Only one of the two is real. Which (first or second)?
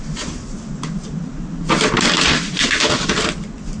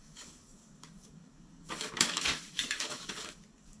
first